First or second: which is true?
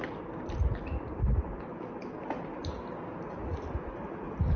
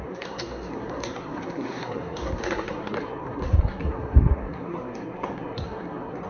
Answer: first